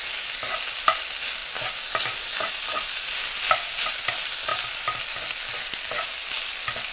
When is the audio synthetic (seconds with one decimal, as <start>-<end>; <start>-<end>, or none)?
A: none